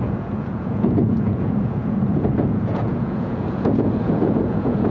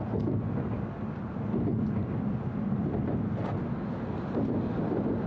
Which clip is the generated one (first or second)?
first